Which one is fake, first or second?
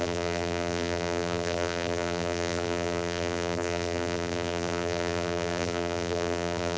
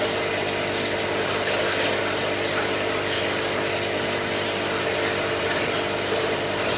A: first